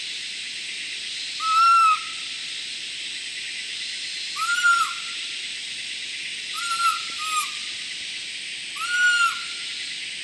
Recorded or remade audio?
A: recorded